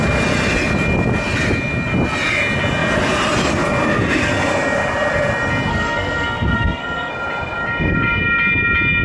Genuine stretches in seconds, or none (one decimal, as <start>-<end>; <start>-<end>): 0.0-5.7; 7.1-9.0